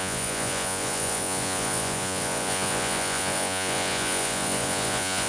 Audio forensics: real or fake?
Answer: fake